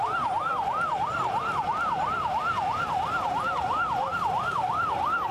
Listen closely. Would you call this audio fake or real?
real